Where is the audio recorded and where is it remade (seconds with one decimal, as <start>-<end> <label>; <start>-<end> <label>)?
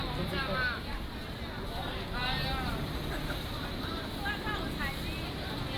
0.0-5.8 recorded